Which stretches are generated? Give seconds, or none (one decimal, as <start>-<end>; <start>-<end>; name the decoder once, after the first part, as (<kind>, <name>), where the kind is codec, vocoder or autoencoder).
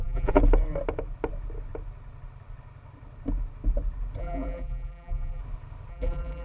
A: 0.0-0.4 (vocoder, BigVGAN v2); 4.2-5.4; 5.9-6.4